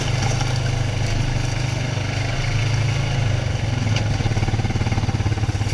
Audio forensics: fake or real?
real